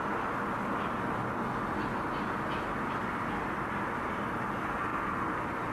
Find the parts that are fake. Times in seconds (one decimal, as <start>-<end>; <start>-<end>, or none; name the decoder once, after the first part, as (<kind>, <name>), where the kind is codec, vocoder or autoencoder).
4.9-5.7 (vocoder, BigVGAN v2)